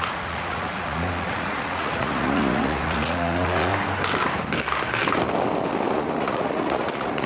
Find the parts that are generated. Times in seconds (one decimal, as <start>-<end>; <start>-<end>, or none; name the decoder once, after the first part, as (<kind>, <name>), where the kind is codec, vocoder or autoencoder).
0.0-3.7 (vocoder, Vocos); 5.9-7.3